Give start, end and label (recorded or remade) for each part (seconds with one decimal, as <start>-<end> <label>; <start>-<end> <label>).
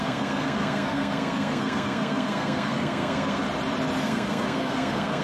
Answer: 0.0-3.4 remade; 3.4-4.0 recorded; 4.0-5.2 remade